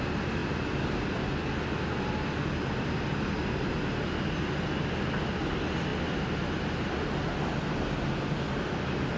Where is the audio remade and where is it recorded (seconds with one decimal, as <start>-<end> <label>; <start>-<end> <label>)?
0.0-9.2 recorded